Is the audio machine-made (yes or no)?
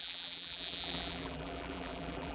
yes